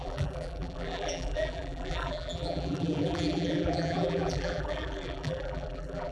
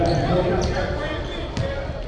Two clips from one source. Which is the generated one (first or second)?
first